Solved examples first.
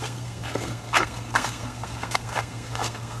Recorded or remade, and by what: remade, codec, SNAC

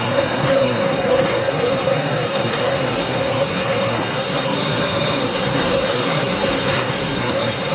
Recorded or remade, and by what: remade, codec, SNAC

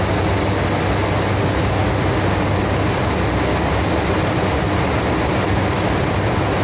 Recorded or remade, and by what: recorded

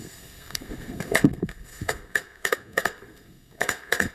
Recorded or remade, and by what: remade, codec, SNAC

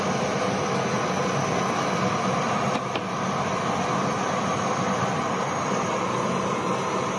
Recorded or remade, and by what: recorded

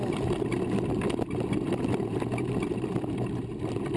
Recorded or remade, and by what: recorded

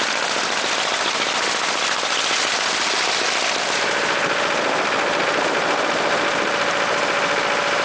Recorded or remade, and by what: recorded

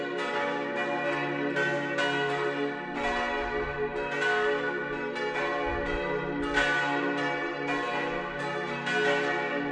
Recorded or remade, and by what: recorded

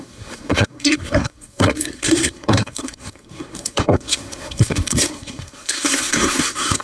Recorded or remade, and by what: remade, codec, SNAC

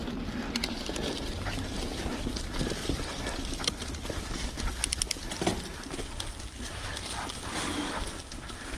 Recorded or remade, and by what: recorded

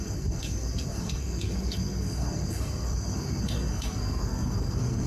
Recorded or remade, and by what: remade, codec, SNAC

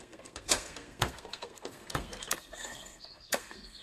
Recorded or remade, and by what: remade, codec, SNAC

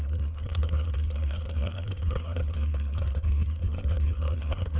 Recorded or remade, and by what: remade, codec, SNAC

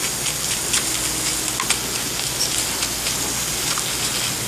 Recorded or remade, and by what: recorded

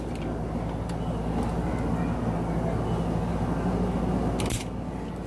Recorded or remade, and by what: recorded